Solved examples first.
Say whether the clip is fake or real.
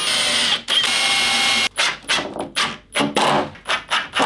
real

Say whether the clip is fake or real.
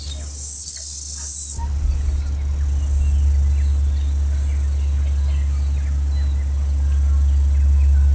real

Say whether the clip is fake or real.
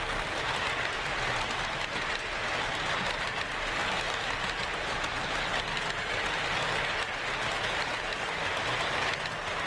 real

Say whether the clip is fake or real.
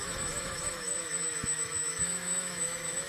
fake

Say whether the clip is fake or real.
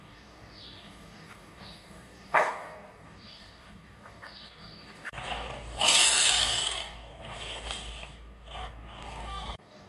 fake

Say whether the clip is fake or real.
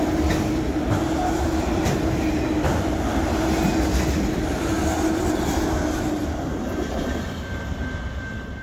real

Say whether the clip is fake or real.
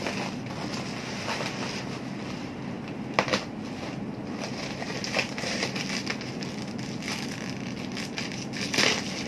real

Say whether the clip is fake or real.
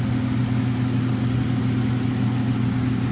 real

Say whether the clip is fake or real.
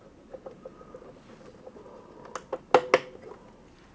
real